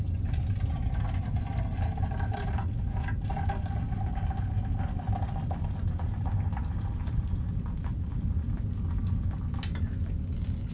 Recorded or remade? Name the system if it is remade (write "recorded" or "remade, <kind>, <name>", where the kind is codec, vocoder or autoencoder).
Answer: recorded